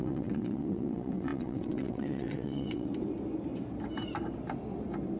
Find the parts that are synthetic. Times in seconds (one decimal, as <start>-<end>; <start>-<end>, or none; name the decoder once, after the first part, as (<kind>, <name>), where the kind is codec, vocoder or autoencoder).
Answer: 0.0-2.9 (vocoder, WaveNeXt)